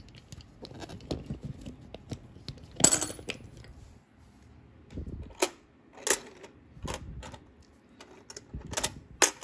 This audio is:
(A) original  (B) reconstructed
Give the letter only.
A